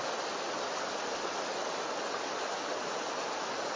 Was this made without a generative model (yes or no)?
yes